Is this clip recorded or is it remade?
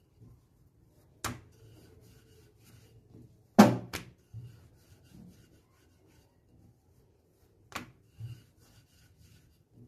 recorded